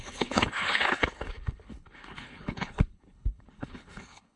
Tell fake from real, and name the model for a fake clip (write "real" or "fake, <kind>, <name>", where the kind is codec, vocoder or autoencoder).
fake, codec, HILCodec